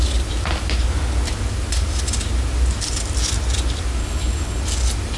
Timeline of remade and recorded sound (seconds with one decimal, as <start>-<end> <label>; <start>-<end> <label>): 0.0-4.0 recorded; 4.0-4.6 remade; 4.6-5.2 recorded